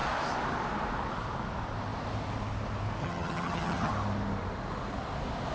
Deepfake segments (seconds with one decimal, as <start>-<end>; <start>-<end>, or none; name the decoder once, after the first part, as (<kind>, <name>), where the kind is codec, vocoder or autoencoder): 3.0-3.9 (vocoder, HiFi-GAN)